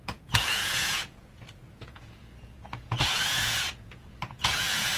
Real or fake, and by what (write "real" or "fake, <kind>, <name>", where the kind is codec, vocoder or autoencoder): fake, vocoder, Vocos